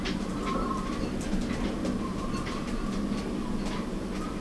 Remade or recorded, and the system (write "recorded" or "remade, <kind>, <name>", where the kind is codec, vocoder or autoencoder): recorded